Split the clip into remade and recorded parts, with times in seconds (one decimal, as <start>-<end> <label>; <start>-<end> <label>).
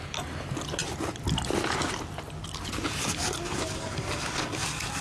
0.0-3.0 recorded; 3.0-5.0 remade